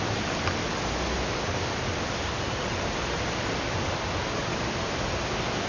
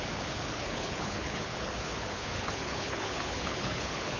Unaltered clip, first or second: first